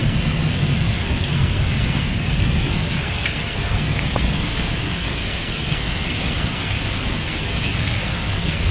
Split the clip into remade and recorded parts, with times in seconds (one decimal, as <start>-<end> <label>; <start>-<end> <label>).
0.0-8.7 remade